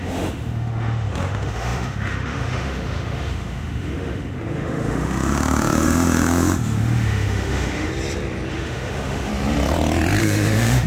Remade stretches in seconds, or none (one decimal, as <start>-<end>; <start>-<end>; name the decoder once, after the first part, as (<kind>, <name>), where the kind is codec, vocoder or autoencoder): 0.0-7.9 (autoencoder, DAC-VAE); 8.5-9.3; 10.2-10.9